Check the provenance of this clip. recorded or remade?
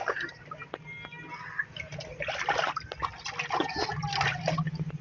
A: recorded